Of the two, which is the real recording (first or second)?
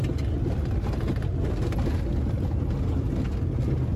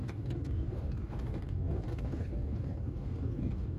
first